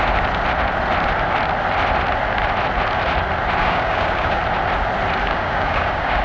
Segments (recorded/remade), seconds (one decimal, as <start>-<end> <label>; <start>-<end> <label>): 0.0-3.6 recorded; 3.6-4.4 remade; 4.4-5.2 recorded; 5.2-6.2 remade